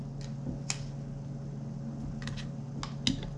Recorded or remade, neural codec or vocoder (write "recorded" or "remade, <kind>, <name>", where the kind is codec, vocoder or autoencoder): recorded